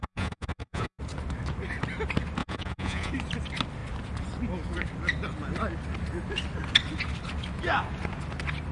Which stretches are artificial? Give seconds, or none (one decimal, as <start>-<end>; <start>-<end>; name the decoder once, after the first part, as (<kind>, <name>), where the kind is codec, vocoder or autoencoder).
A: 0.0-1.0 (vocoder, Vocos); 2.4-3.1